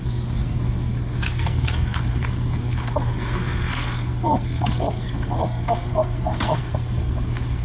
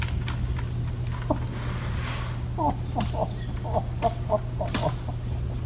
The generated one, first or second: first